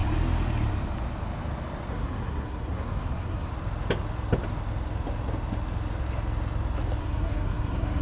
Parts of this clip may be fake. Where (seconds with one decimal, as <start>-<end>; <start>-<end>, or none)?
1.9-3.5; 7.0-8.0